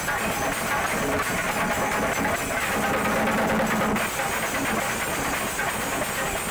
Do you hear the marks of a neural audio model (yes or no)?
no